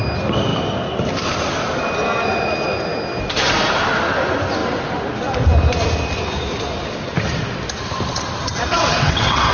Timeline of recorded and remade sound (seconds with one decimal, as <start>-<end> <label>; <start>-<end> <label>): 0.0-8.7 recorded; 8.7-9.5 remade